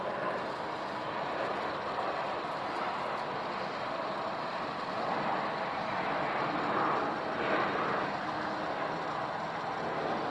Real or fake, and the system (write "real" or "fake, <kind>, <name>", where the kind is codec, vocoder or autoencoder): real